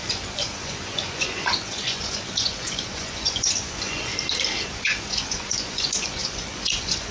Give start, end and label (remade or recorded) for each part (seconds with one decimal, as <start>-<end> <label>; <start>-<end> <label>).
0.0-4.1 remade; 4.1-4.6 recorded; 4.6-7.1 remade